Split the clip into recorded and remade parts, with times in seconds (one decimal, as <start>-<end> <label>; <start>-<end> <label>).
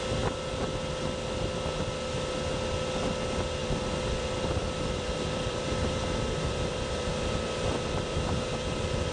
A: 0.0-3.6 recorded; 3.6-8.3 remade; 8.3-9.1 recorded